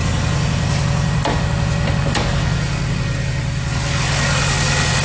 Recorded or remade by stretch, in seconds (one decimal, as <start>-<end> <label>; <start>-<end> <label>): 0.0-5.0 recorded